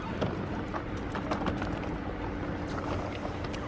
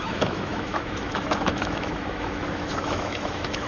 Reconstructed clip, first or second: second